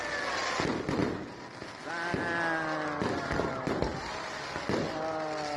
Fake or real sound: real